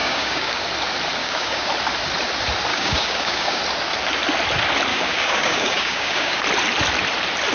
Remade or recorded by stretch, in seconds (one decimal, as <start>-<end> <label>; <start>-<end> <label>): 0.0-0.6 remade; 0.6-1.2 recorded; 1.2-1.7 remade; 1.7-2.7 recorded; 2.7-3.6 remade; 3.6-4.9 recorded; 4.9-6.4 remade; 6.4-7.5 recorded

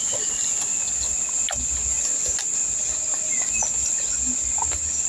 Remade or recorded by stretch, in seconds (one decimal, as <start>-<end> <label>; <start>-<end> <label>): 0.0-5.1 recorded

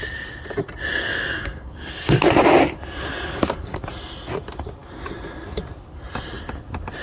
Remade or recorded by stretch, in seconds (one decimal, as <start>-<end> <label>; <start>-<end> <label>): 0.0-1.1 recorded; 1.1-2.2 remade; 2.2-7.0 recorded

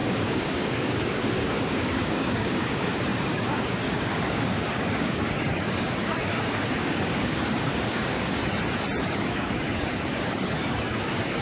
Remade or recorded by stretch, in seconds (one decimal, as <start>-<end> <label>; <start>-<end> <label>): 0.0-8.4 remade; 8.4-9.0 recorded; 9.0-11.4 remade